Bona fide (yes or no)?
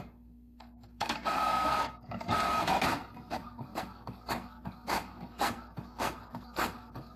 no